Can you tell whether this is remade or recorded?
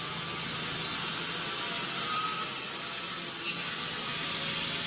recorded